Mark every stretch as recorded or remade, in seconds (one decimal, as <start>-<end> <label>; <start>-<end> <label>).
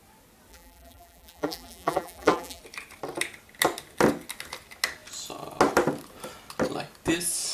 0.0-0.5 recorded; 0.5-2.6 remade; 2.6-7.5 recorded